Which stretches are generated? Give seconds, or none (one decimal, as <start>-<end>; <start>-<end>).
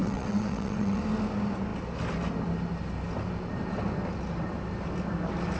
0.0-1.0